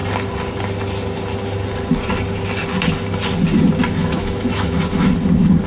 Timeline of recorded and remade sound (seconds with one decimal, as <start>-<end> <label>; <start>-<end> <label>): 0.0-4.0 recorded; 4.0-4.8 remade; 4.8-5.7 recorded